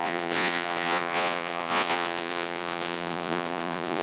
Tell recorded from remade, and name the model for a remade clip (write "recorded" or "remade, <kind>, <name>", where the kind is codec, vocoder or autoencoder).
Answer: remade, vocoder, Vocos